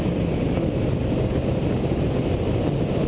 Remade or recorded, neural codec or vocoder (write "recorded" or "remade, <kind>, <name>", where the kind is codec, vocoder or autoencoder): recorded